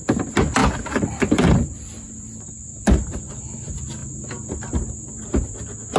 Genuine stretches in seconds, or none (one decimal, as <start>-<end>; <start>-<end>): 0.0-0.6; 3.3-6.0